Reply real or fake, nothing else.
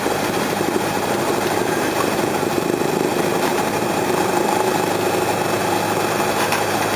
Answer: fake